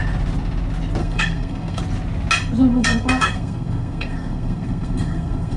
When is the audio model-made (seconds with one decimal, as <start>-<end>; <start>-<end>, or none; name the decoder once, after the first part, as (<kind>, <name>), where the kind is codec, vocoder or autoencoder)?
1.0-1.8 (codec, SNAC); 2.7-5.6

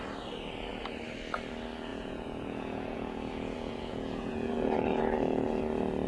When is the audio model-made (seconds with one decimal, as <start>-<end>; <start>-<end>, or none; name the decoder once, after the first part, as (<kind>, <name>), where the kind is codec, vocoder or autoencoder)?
1.9-5.6 (vocoder, Vocos)

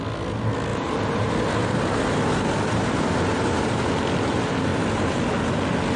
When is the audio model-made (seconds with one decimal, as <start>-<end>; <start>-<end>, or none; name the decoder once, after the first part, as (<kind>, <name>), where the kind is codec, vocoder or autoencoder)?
0.7-3.9 (vocoder, BigVGAN v2); 4.7-5.2